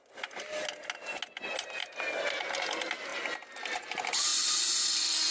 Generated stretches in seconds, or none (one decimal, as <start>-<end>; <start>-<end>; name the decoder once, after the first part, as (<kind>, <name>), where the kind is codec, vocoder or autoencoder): none